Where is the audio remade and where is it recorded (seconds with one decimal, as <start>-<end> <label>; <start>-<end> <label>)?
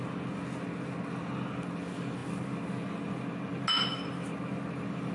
0.0-5.1 recorded